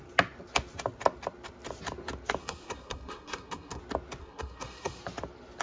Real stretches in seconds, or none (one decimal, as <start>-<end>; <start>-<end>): 0.0-2.4; 3.8-4.2; 5.0-5.6